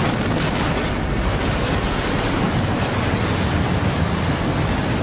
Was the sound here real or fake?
real